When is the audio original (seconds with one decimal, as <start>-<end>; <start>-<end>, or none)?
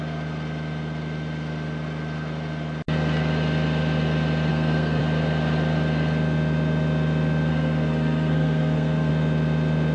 0.0-4.5; 5.0-7.5; 9.1-9.9